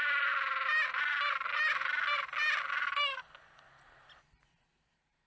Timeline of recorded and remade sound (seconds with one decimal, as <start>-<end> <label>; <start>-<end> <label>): 0.0-5.3 recorded